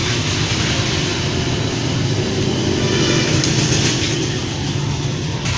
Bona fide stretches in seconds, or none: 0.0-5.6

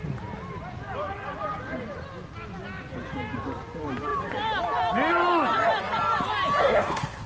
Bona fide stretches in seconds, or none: 0.0-6.6

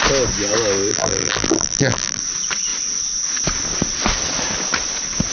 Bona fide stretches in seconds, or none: 0.0-0.9; 2.2-5.3

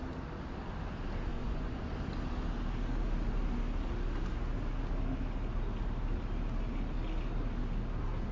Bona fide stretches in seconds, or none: 0.0-1.3; 1.9-8.3

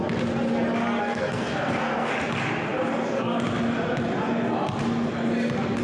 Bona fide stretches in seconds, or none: 0.0-1.0; 2.1-5.8

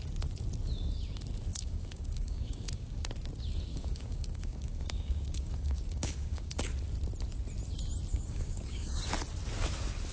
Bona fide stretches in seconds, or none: 0.0-1.5; 3.1-3.7; 6.7-8.1; 9.0-10.1

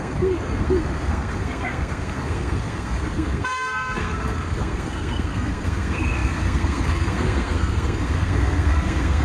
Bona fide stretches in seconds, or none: none

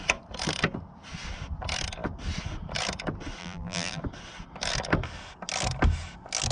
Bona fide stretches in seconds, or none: 0.0-3.4; 4.0-6.5